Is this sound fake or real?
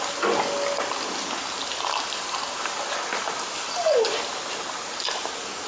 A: real